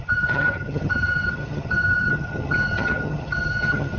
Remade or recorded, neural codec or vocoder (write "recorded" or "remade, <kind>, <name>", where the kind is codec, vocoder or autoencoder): remade, vocoder, HiFi-GAN